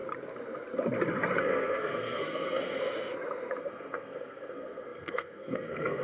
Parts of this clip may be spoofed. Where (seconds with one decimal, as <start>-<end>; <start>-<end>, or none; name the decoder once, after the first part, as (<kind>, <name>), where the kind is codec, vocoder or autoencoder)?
1.4-2.8 (codec, SNAC); 3.6-6.0